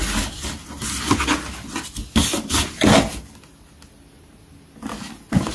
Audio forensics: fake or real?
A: real